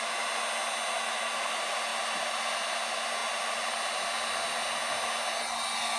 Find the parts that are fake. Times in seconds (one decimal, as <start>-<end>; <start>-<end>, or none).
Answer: none